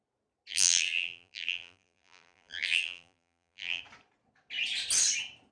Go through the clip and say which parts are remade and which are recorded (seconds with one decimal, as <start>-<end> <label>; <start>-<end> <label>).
0.0-0.5 recorded; 0.5-3.8 remade; 3.8-5.5 recorded